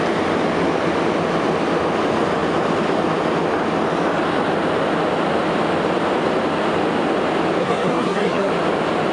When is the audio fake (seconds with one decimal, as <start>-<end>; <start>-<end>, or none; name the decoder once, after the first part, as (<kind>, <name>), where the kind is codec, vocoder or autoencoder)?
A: 7.6-8.5 (codec, SNAC)